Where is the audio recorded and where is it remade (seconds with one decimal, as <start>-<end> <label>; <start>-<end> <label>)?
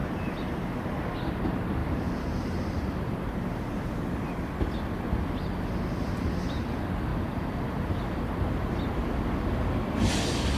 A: 0.0-1.1 remade; 1.1-1.8 recorded; 1.8-4.0 remade; 4.0-7.1 recorded; 7.1-8.2 remade; 8.2-10.6 recorded